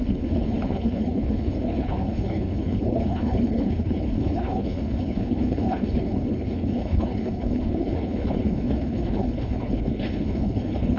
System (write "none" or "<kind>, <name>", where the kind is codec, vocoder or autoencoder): codec, HILCodec